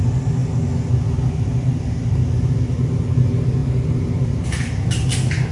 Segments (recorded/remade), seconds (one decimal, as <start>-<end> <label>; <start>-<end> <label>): 0.0-5.5 recorded